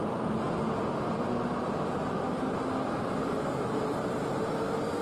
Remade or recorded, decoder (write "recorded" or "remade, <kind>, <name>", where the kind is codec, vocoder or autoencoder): recorded